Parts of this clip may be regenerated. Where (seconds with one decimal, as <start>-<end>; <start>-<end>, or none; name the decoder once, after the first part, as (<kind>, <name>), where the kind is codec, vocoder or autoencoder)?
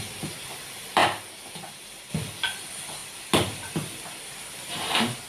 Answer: 0.0-1.0 (vocoder, BigVGAN v2); 2.1-5.3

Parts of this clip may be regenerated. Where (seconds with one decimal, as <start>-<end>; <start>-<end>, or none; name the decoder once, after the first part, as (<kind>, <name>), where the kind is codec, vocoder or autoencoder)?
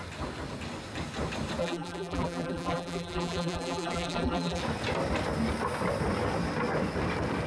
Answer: 1.6-4.6 (vocoder, BigVGAN v2)